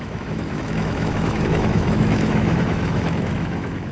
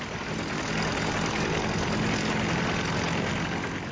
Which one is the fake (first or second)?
first